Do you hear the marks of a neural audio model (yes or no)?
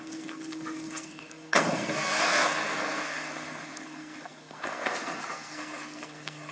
yes